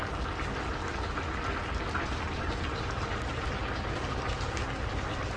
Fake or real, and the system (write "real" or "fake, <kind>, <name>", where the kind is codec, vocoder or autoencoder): real